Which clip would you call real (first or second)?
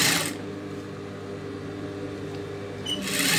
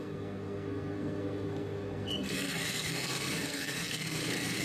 first